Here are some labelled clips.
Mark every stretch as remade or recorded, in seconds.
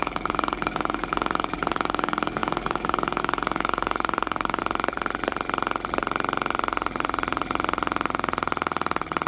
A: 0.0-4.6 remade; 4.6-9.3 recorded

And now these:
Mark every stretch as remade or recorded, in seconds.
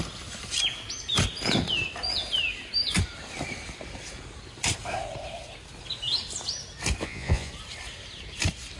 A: 0.0-7.0 recorded; 7.0-7.5 remade; 7.5-8.8 recorded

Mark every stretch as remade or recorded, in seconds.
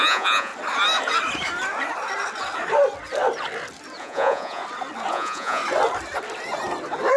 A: 0.0-0.5 remade; 0.5-4.0 recorded; 4.0-4.6 remade; 4.6-5.1 recorded; 5.1-5.6 remade; 5.6-7.2 recorded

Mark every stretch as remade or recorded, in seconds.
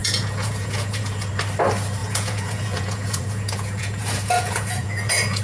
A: 0.0-1.3 remade; 1.3-2.0 recorded; 2.0-5.4 remade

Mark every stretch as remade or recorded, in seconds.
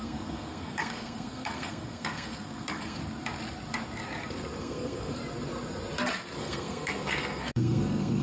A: 0.0-3.0 remade; 3.0-4.6 recorded; 4.6-5.2 remade; 5.2-6.4 recorded; 6.4-8.2 remade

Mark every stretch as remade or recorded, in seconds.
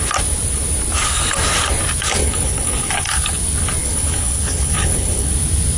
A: 0.0-2.2 recorded; 2.2-2.9 remade; 2.9-3.8 recorded; 3.8-5.3 remade; 5.3-5.8 recorded